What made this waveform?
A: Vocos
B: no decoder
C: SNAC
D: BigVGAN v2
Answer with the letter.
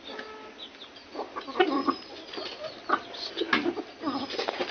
B